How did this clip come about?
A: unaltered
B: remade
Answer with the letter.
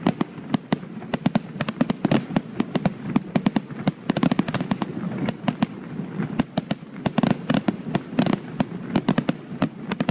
A